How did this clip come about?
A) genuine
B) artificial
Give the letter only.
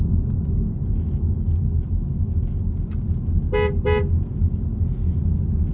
A